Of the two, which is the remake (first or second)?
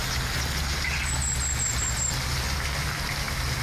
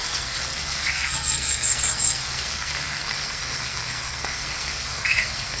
second